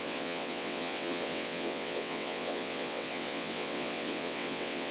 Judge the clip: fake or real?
fake